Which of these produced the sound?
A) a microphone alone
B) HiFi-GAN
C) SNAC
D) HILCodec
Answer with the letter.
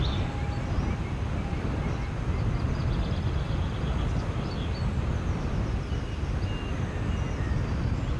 A